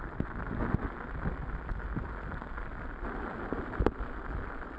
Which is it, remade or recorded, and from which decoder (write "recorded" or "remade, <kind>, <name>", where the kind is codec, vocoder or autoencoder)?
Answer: recorded